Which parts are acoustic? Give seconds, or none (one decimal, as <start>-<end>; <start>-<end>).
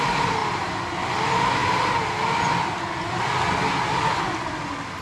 0.0-5.0